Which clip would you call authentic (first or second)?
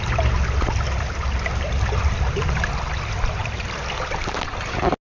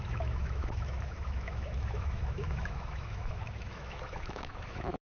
first